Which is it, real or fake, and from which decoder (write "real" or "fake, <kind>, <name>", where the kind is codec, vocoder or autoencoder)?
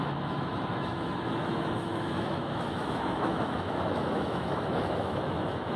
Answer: fake, autoencoder, DAC-VAE